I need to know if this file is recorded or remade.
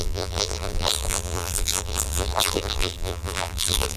remade